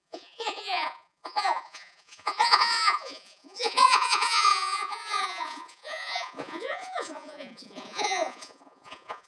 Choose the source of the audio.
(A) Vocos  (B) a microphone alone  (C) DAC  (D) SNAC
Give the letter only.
A